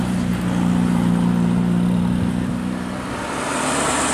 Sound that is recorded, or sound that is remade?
recorded